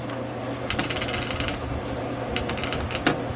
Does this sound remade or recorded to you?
recorded